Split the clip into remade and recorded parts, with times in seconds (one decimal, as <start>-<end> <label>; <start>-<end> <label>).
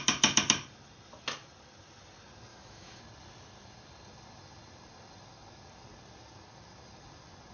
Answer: 0.0-2.5 recorded; 2.5-3.0 remade; 3.0-7.5 recorded